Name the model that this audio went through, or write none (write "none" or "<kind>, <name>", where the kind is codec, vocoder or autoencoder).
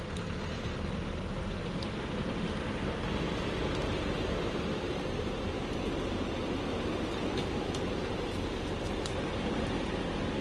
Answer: vocoder, BigVGAN v2